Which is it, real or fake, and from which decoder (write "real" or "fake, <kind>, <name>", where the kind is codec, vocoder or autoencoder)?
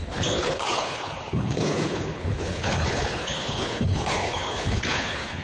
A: fake, codec, HILCodec